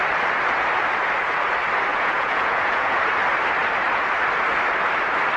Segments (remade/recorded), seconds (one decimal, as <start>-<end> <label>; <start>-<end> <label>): 0.0-1.9 recorded; 1.9-3.0 remade; 3.0-5.4 recorded